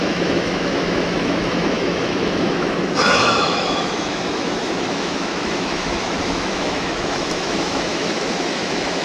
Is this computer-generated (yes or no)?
yes